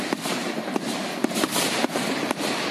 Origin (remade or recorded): remade